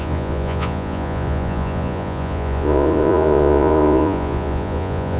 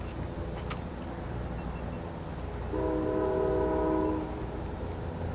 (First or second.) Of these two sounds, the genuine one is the second